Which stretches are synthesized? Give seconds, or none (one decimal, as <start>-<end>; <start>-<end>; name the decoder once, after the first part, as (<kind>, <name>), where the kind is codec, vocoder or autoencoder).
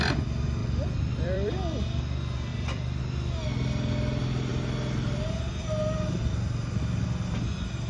0.6-1.5 (vocoder, BigVGAN v2); 2.5-3.0